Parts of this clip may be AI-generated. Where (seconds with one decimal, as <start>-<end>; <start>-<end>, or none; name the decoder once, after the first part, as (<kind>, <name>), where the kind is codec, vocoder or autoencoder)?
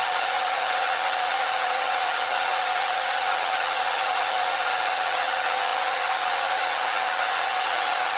0.0-8.2 (vocoder, HiFi-GAN)